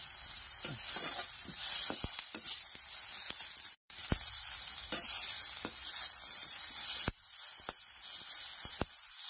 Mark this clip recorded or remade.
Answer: recorded